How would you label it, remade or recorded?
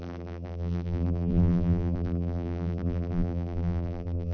remade